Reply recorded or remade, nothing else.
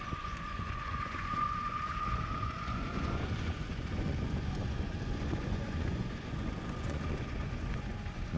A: remade